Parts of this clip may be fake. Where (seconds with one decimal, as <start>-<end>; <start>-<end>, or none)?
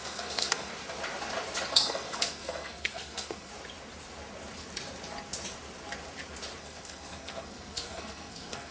0.0-0.7; 1.7-3.5; 6.6-8.7